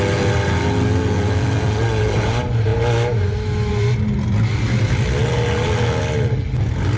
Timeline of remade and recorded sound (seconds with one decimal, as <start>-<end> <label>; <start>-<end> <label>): 0.0-7.0 recorded